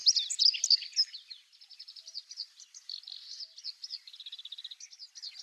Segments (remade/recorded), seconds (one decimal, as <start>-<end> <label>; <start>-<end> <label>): 0.0-0.6 remade; 0.6-1.7 recorded; 1.7-4.9 remade; 4.9-5.4 recorded